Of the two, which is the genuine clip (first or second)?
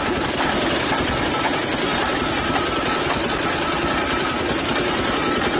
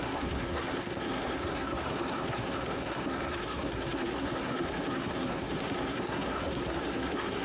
first